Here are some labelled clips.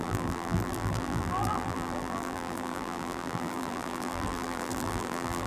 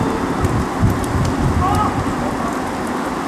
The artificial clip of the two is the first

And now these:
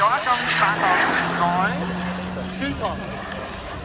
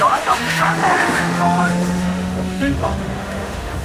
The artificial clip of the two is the second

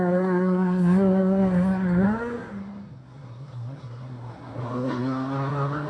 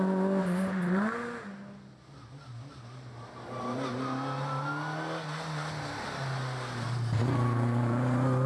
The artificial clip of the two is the first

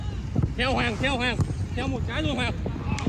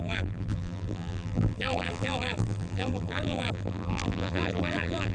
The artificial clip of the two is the second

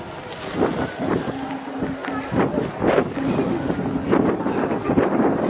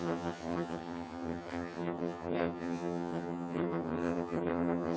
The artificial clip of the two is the second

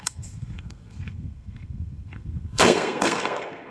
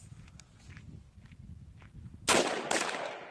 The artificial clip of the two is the first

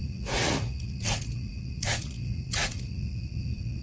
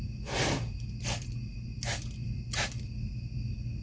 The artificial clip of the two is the first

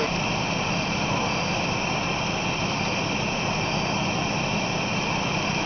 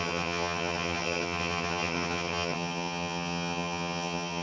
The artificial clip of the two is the second